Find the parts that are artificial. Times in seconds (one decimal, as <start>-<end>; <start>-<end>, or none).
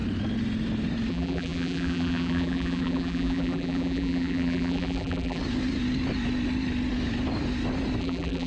1.1-5.4; 8.0-8.5